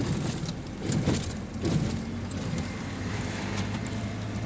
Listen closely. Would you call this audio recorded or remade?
remade